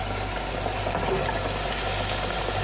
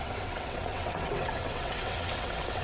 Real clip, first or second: first